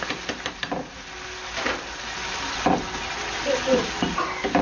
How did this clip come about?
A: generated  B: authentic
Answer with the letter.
B